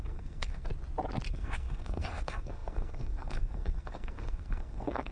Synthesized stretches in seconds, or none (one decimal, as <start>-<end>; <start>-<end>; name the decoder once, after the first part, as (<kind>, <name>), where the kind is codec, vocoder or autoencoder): 0.0-0.7 (codec, SNAC); 1.3-5.1